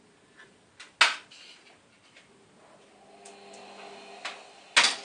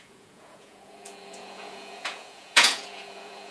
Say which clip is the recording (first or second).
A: first